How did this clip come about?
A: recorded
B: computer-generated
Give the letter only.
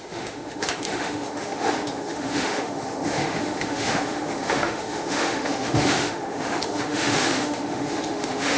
B